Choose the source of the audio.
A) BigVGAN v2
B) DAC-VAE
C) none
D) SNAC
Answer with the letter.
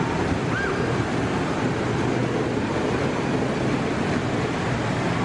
C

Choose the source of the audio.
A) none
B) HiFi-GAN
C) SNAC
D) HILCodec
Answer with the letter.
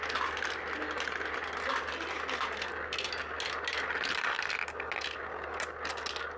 A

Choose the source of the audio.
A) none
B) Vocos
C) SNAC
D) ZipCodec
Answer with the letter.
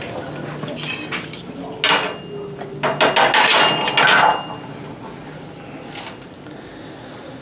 A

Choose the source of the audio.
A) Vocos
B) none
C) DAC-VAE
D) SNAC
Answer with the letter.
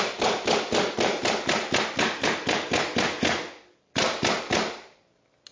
B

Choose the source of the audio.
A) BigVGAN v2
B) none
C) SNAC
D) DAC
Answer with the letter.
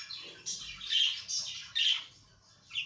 B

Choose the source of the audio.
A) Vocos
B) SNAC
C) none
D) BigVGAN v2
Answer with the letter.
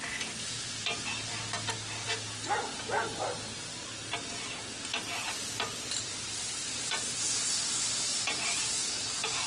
C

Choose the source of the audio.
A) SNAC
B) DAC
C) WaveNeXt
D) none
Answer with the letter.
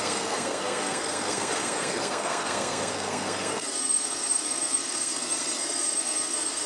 A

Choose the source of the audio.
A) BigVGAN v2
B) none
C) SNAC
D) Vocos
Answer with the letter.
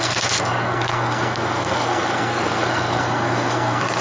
C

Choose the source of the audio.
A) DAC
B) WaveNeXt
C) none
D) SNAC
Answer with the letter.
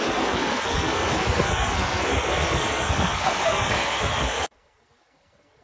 D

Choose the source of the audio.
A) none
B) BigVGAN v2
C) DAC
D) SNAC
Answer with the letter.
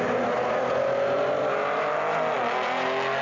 A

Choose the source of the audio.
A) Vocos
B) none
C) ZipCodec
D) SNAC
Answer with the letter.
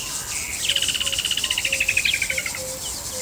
B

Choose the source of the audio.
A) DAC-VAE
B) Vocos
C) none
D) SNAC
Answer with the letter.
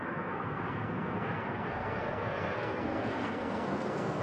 D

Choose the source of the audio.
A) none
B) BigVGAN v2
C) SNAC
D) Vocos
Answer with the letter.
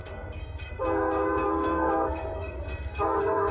C